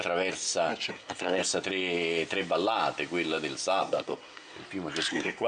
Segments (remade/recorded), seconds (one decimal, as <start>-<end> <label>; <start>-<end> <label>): 0.0-0.9 recorded; 0.9-1.4 remade; 1.4-3.8 recorded; 3.8-4.6 remade; 4.6-5.1 recorded; 5.1-5.5 remade